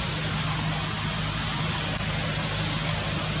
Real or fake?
real